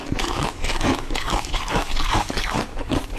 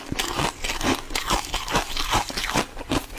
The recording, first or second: second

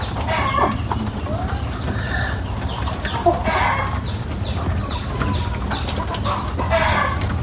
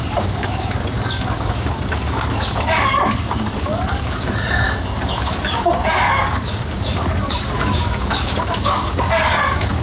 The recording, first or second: first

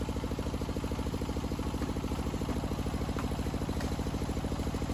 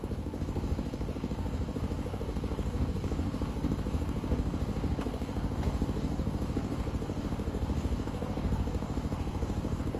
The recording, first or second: first